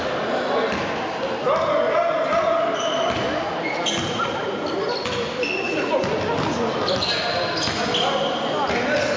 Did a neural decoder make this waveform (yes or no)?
no